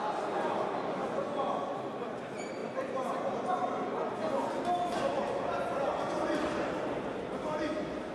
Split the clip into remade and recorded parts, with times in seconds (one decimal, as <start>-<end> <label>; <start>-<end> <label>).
0.0-8.1 recorded